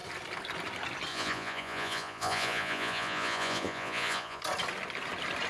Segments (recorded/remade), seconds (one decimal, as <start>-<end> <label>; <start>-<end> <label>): 0.0-1.1 recorded; 1.1-4.4 remade; 4.4-5.5 recorded